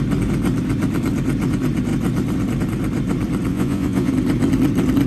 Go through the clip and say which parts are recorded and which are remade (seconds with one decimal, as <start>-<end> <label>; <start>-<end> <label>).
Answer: 0.0-3.5 recorded; 3.5-4.1 remade; 4.1-5.1 recorded